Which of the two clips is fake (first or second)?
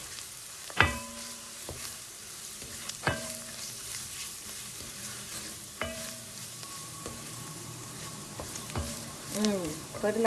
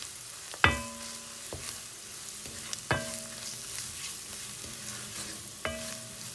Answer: first